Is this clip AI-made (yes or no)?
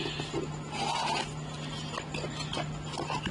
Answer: no